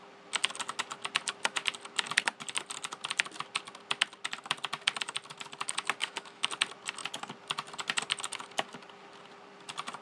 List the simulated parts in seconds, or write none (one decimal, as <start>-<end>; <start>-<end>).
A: 6.0-6.5